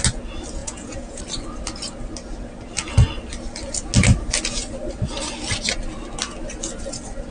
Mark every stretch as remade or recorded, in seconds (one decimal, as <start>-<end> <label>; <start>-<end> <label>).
0.0-0.6 recorded; 0.6-1.2 remade; 1.2-7.3 recorded